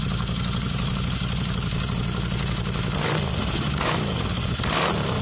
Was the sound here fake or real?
real